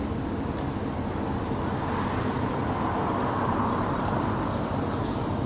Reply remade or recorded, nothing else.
recorded